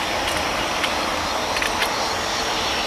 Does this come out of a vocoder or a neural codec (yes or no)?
no